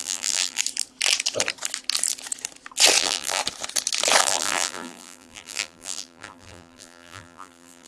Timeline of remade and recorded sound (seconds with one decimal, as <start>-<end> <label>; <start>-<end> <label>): 0.0-0.6 remade; 0.6-3.0 recorded; 3.0-3.4 remade; 3.4-4.2 recorded; 4.2-7.9 remade